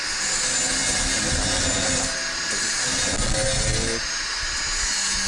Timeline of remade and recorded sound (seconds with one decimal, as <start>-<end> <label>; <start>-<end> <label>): 0.0-5.3 recorded